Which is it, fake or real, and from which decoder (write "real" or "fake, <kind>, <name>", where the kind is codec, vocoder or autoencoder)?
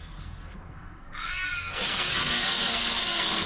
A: fake, codec, SNAC